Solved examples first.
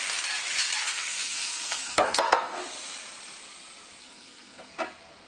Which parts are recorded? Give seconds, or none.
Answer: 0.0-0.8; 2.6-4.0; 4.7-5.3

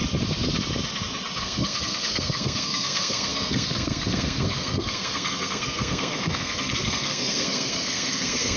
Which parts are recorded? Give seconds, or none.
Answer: 0.0-1.4

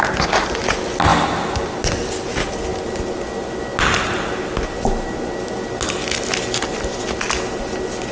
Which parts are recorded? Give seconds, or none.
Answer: 0.0-8.1

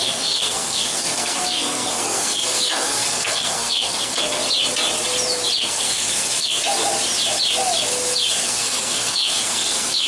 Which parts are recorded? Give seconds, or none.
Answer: 4.4-5.6; 6.6-8.3

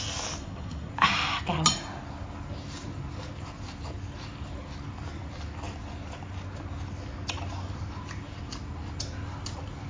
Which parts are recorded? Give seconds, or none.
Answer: 0.0-0.4; 0.9-9.9

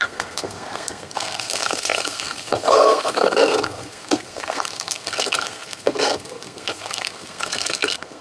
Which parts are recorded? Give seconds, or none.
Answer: none